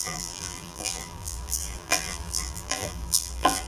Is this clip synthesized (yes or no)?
yes